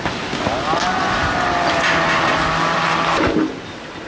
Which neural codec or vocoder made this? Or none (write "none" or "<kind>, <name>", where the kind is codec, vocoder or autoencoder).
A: none